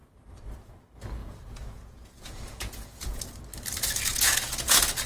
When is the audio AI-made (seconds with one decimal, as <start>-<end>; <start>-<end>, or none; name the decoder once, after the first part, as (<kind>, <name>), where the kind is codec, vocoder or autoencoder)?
1.2-3.2 (vocoder, Vocos); 4.1-5.1